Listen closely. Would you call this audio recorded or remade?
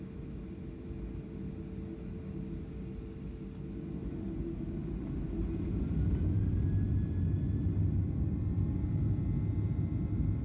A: recorded